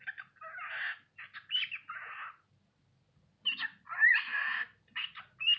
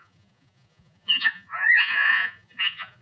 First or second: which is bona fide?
first